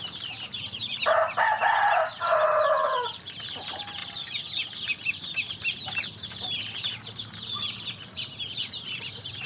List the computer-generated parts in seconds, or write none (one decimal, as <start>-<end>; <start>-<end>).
none